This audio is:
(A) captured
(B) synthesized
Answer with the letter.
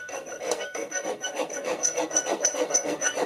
B